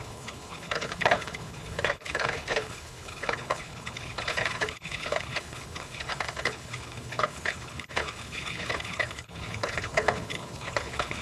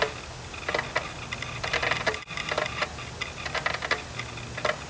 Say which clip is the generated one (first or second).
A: first